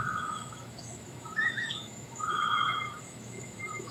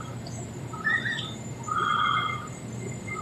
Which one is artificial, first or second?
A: first